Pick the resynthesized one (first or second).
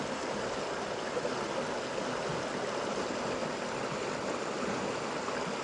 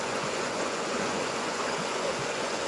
second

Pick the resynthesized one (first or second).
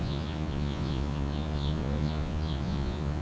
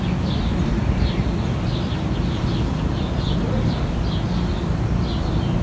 first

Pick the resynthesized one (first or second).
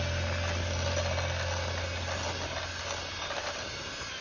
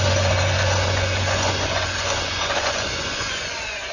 second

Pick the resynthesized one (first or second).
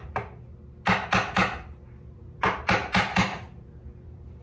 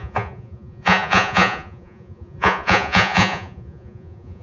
second